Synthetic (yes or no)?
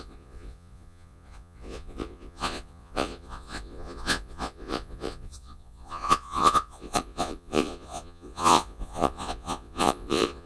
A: yes